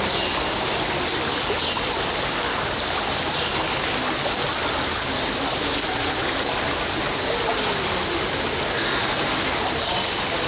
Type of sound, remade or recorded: recorded